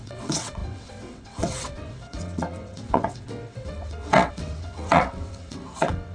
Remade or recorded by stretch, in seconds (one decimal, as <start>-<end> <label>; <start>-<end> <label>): 0.0-6.1 remade